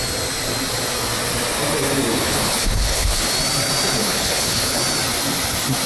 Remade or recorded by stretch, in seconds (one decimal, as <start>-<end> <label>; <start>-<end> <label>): 0.0-2.1 recorded; 2.1-3.3 remade; 3.3-4.0 recorded; 4.0-4.8 remade; 4.8-5.9 recorded